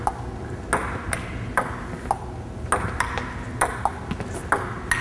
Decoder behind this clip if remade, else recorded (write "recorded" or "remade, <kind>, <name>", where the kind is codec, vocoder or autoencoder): recorded